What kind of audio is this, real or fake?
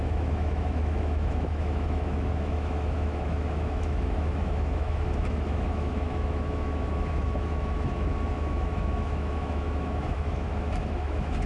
fake